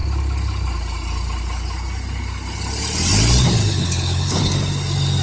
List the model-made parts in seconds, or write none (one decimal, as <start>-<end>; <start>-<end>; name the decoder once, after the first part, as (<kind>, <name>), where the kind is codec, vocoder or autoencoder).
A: 3.6-4.5 (codec, HILCodec)